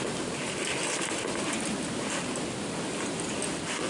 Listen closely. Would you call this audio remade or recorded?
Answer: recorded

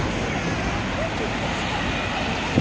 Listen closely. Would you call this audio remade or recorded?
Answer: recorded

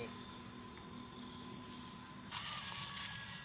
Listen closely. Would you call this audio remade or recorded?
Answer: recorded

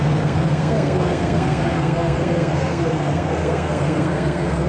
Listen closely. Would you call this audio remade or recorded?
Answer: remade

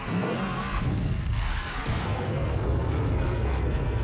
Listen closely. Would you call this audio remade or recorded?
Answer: remade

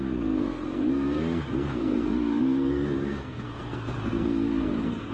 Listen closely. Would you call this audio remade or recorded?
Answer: remade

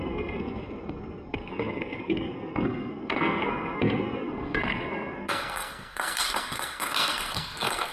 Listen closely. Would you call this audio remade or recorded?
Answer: remade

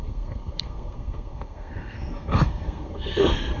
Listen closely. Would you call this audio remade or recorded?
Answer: remade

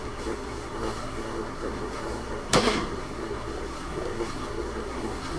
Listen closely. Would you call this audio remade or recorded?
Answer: remade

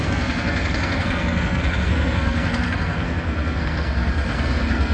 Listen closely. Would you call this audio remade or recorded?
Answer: remade